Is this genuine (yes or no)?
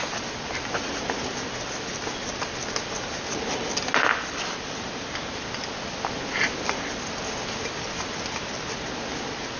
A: yes